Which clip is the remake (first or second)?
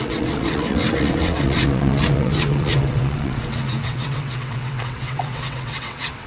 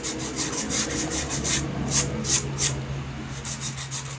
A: first